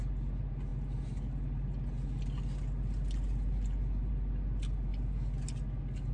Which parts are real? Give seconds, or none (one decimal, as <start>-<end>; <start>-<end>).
0.0-6.1

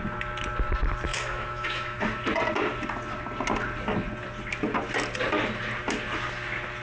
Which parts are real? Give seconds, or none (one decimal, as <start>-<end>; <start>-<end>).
0.0-1.1; 2.0-6.8